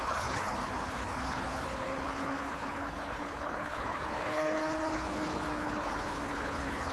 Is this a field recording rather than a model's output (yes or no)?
no